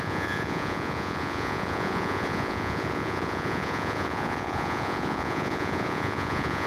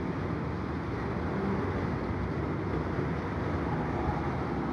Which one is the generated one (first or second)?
first